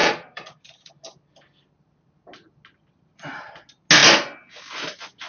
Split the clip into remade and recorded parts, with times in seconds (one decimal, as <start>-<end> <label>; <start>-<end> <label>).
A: 0.0-0.9 remade; 0.9-5.3 recorded